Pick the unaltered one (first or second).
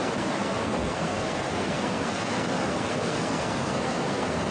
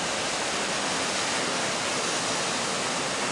second